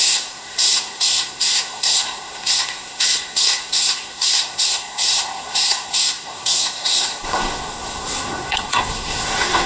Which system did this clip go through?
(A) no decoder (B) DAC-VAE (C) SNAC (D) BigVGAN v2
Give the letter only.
C